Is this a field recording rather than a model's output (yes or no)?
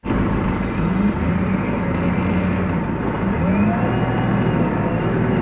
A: yes